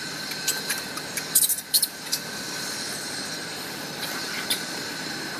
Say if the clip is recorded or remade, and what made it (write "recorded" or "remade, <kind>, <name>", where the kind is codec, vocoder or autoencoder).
remade, vocoder, BigVGAN v2